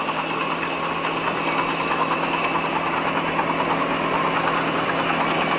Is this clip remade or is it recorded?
recorded